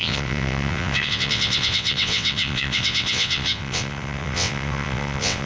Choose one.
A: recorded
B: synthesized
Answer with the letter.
B